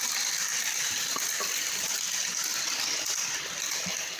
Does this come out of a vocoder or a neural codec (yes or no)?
no